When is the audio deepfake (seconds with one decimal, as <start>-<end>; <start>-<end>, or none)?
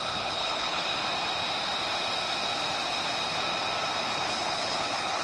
0.0-0.9; 4.0-5.2